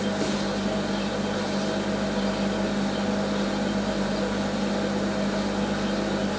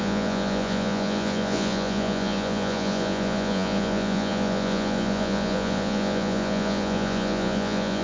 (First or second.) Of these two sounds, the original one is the first